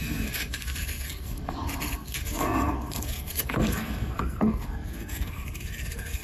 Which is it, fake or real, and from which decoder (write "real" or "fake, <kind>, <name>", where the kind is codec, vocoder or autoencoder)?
fake, codec, SNAC